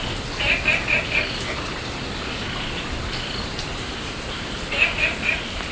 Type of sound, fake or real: real